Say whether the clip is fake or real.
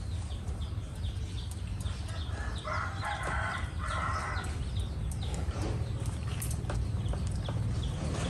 real